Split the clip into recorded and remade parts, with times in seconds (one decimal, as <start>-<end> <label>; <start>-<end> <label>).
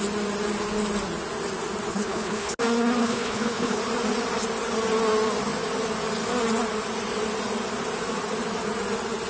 0.0-1.9 recorded; 1.9-2.6 remade; 2.6-3.0 recorded; 3.0-3.8 remade; 3.8-9.3 recorded